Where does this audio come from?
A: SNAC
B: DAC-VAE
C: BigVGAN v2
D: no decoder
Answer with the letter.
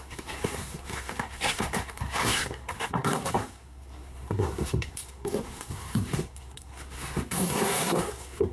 A